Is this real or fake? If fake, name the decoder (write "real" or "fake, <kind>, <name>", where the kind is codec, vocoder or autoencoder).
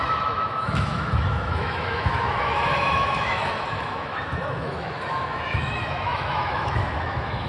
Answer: fake, autoencoder, DAC-VAE